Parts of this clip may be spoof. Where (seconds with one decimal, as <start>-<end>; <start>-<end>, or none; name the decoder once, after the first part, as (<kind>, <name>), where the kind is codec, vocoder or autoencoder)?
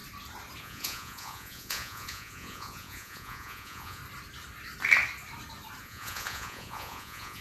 0.6-4.0 (vocoder, Vocos); 5.8-7.4